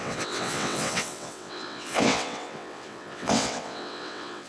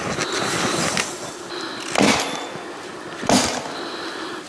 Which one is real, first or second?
second